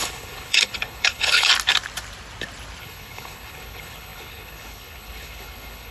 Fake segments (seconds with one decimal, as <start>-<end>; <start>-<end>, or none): 0.0-1.5; 2.8-5.9